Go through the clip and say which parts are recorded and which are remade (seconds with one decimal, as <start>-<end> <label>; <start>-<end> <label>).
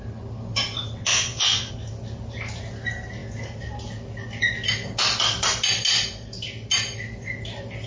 0.0-1.1 recorded; 1.1-1.7 remade; 1.7-7.9 recorded